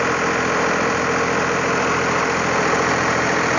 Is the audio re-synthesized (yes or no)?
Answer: no